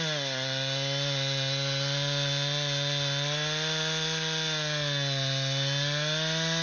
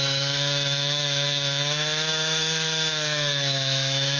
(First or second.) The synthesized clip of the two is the second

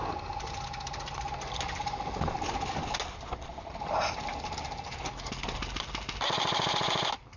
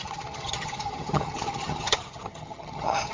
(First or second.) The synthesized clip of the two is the second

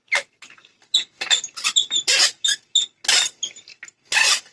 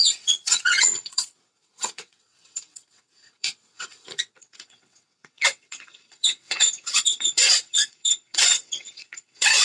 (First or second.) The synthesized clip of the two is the second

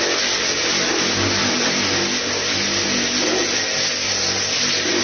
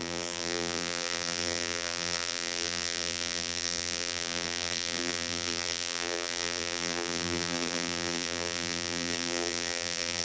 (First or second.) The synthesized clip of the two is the second